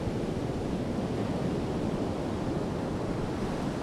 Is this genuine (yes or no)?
yes